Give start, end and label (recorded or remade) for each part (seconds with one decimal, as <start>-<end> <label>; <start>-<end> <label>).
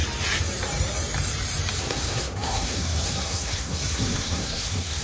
0.0-1.8 recorded; 1.8-5.0 remade